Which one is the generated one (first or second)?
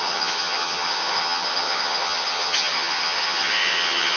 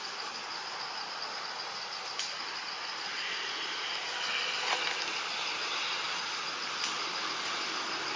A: first